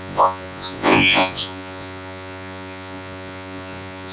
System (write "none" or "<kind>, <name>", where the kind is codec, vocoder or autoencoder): vocoder, Vocos